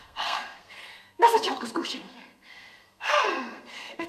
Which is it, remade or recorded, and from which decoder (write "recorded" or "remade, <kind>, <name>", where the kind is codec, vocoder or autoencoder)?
remade, codec, SNAC